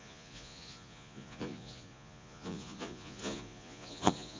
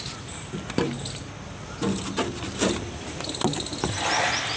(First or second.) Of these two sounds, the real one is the second